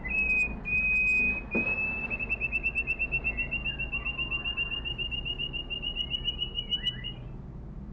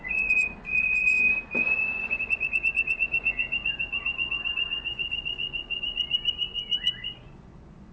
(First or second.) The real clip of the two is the first